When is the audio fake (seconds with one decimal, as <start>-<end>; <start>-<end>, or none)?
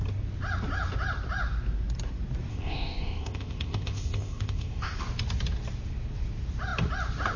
2.5-5.0